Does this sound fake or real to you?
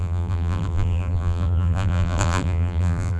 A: fake